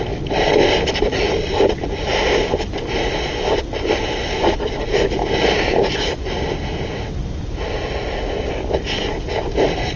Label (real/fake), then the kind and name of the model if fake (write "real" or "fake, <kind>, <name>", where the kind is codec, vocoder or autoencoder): real